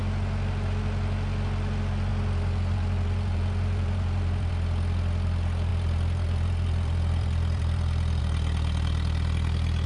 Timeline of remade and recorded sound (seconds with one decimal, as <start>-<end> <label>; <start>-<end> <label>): 0.0-2.1 recorded; 2.1-4.5 remade; 4.5-5.7 recorded; 5.7-8.2 remade; 8.2-9.9 recorded